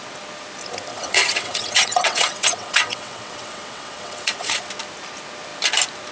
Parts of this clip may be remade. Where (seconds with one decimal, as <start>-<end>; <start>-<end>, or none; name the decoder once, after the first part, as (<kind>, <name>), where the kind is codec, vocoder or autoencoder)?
0.9-4.6 (vocoder, WaveNeXt)